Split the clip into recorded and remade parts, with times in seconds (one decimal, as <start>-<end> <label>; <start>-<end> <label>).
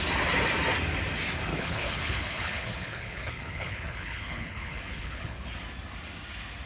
0.0-1.5 recorded; 1.5-5.5 remade; 5.5-6.7 recorded